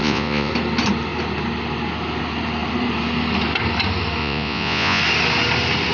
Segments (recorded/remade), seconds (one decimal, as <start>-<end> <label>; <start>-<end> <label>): 0.0-0.5 remade; 0.5-4.2 recorded; 4.2-5.0 remade; 5.0-5.9 recorded